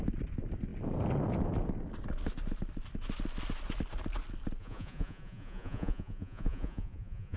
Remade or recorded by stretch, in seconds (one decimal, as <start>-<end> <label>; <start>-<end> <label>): 0.0-4.6 recorded; 4.6-7.4 remade